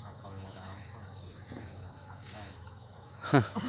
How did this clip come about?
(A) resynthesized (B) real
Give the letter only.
A